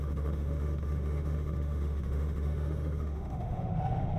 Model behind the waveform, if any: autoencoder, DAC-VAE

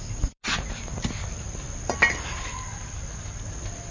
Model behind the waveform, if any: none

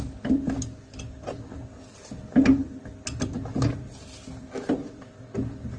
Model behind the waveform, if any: none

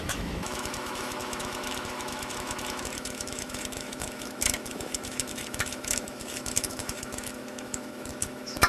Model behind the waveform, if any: autoencoder, DAC-VAE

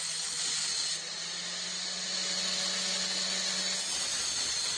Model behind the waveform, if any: none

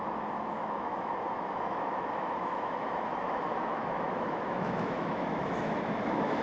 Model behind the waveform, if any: autoencoder, DAC-VAE